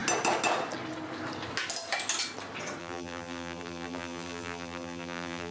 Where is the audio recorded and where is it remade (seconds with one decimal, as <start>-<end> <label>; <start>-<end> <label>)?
0.0-2.8 recorded; 2.8-5.5 remade